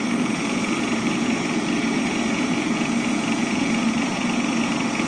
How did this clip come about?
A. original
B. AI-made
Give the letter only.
B